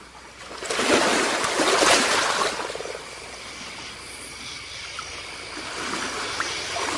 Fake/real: real